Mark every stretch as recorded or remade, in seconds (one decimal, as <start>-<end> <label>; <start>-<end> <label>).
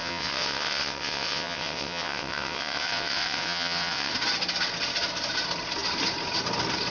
0.0-4.1 remade; 4.1-6.9 recorded